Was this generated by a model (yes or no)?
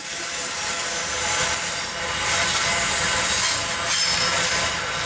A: no